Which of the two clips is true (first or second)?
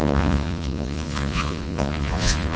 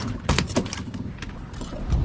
second